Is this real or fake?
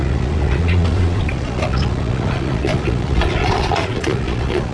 fake